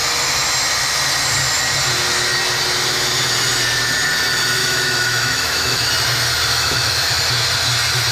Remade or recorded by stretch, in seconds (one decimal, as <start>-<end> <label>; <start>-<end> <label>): 0.0-4.6 recorded; 4.6-5.9 remade; 5.9-6.5 recorded; 6.5-7.2 remade; 7.2-8.1 recorded